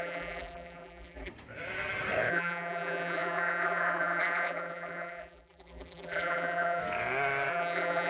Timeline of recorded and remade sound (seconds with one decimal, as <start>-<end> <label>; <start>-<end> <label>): 0.0-1.3 remade; 1.3-2.3 recorded; 2.3-6.8 remade; 6.8-7.5 recorded; 7.5-8.1 remade